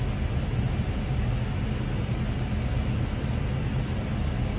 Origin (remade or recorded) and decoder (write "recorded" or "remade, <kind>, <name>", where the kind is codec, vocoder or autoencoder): recorded